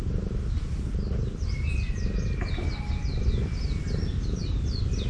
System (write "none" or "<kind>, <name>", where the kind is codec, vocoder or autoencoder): none